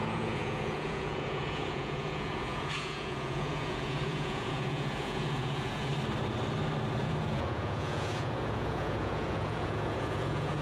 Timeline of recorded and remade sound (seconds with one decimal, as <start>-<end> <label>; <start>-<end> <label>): 0.0-5.9 remade; 5.9-7.0 recorded; 7.0-10.6 remade